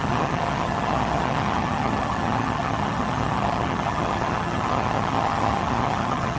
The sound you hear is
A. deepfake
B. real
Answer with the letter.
A